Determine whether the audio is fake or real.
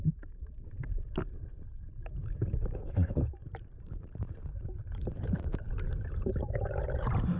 fake